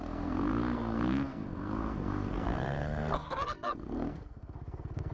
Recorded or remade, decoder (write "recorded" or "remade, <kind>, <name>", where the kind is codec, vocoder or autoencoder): remade, codec, SNAC